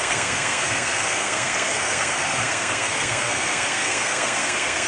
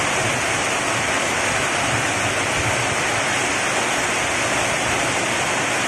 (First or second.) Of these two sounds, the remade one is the first